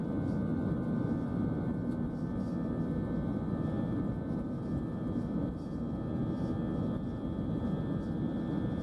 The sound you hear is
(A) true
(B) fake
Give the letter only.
A